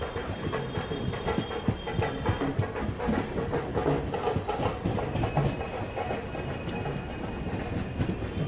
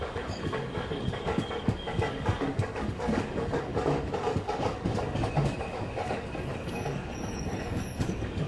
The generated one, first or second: second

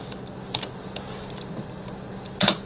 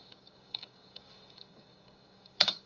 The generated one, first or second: second